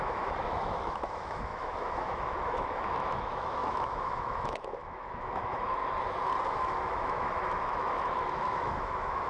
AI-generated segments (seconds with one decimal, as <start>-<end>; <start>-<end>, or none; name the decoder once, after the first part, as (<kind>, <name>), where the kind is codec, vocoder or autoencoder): 0.0-5.8 (autoencoder, DAC-VAE); 6.5-9.3

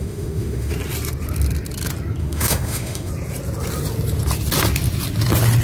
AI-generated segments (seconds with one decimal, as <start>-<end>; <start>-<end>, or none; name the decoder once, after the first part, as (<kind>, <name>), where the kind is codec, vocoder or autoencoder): 0.0-0.7 (autoencoder, DAC-VAE); 2.2-3.1

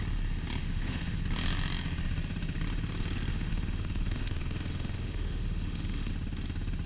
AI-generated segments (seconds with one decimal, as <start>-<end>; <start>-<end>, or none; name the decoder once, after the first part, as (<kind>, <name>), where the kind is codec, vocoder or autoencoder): 0.6-1.2 (autoencoder, DAC-VAE); 3.3-6.1